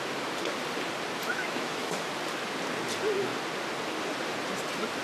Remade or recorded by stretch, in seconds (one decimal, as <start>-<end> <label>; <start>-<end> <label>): 0.0-1.3 recorded; 1.3-2.1 remade; 2.1-5.0 recorded